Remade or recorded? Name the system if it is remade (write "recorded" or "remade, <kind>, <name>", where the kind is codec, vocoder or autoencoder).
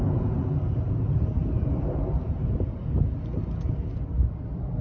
recorded